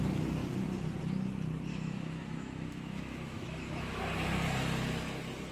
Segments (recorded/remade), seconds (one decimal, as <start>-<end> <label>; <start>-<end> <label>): 0.0-1.7 recorded; 1.7-4.0 remade; 4.0-5.5 recorded